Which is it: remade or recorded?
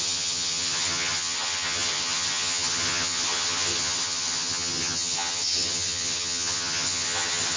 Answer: remade